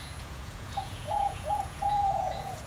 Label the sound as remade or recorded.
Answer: remade